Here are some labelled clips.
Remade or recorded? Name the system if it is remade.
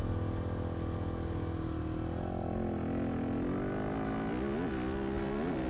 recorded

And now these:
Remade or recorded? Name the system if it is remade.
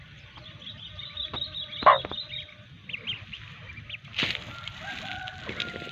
recorded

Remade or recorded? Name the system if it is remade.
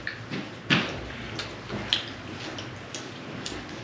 recorded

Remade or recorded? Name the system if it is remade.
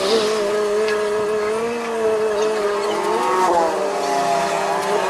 recorded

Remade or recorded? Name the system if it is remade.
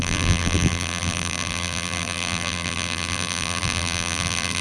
remade, vocoder, BigVGAN v2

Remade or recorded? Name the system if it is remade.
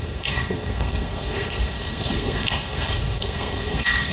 remade, codec, SNAC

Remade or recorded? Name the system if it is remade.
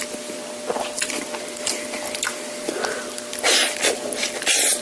remade, vocoder, BigVGAN v2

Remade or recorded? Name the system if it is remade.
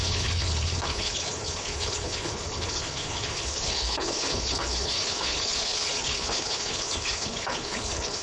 remade, codec, HILCodec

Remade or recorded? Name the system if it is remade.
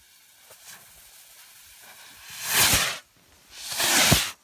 recorded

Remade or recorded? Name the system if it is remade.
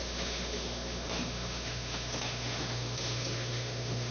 remade, autoencoder, DAC-VAE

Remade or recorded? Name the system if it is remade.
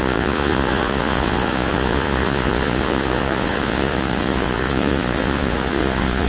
remade, vocoder, Vocos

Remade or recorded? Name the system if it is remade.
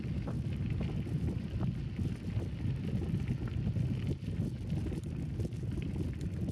recorded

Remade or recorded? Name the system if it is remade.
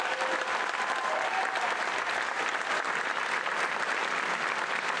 recorded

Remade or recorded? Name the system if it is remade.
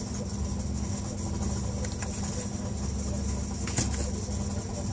recorded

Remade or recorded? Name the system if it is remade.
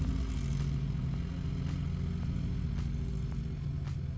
recorded